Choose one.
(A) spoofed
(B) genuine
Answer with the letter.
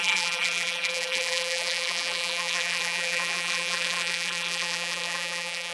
A